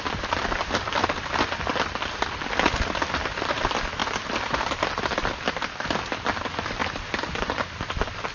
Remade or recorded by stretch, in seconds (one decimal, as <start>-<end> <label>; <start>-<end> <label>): 0.0-4.0 recorded; 4.0-4.9 remade; 4.9-6.8 recorded; 6.8-7.8 remade; 7.8-8.3 recorded